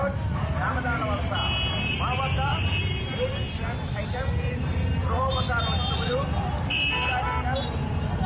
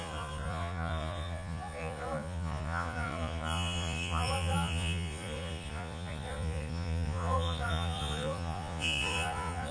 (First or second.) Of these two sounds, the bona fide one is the first